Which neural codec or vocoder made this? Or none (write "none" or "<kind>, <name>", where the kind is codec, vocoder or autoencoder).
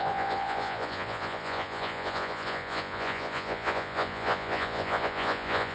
vocoder, Vocos